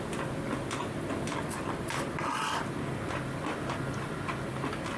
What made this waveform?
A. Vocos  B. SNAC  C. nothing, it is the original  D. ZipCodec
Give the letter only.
C